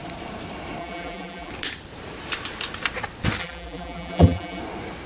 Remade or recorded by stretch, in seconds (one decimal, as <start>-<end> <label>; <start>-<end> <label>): 0.0-0.8 recorded; 0.8-1.5 remade; 1.5-3.4 recorded; 3.4-4.6 remade; 4.6-5.1 recorded